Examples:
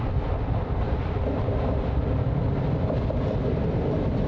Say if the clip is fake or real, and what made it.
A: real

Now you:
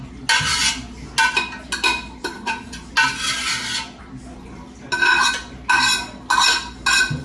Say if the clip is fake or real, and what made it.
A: real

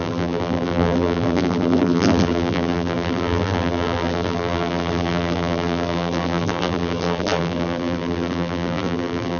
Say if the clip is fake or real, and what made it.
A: fake, vocoder, BigVGAN v2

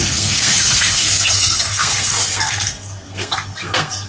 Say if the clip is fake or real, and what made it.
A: fake, codec, SNAC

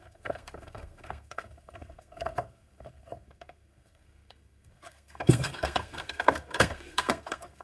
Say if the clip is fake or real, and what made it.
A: fake, codec, SNAC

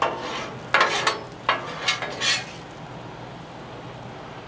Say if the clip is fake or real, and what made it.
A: real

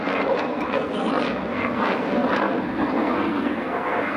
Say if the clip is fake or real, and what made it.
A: fake, codec, SNAC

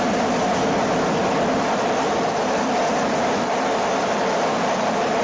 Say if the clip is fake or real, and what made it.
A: real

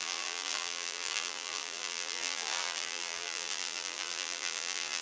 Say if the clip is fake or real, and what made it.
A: fake, vocoder, BigVGAN v2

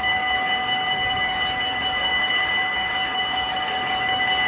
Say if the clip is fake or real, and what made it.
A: fake, codec, DAC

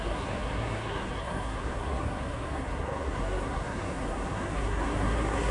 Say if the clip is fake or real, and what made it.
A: fake, codec, SNAC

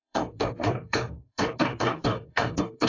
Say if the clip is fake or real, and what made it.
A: fake, codec, DAC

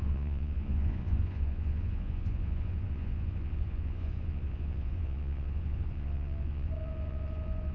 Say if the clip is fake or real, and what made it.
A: fake, vocoder, Vocos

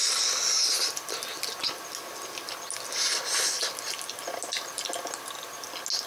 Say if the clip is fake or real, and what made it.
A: real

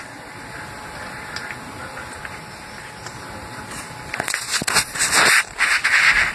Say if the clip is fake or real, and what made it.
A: real